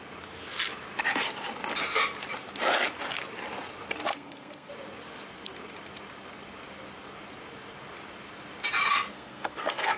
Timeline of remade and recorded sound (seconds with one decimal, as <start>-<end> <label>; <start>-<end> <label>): 0.0-4.1 recorded; 4.1-4.7 remade; 4.7-9.1 recorded; 9.1-10.0 remade